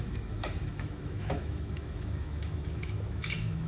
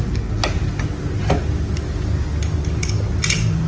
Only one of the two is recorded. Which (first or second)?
second